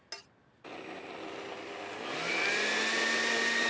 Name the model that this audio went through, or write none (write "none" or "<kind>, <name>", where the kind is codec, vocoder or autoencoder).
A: none